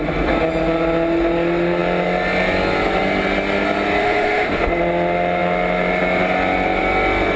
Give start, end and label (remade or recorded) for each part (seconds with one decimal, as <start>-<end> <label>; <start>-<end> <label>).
0.0-4.0 recorded; 4.0-4.7 remade; 4.7-7.4 recorded